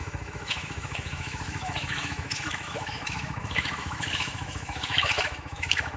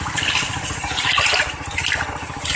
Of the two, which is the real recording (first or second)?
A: second